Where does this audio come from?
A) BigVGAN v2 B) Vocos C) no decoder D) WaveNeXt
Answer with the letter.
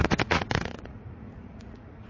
B